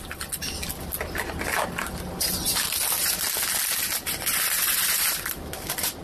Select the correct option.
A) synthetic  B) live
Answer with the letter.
B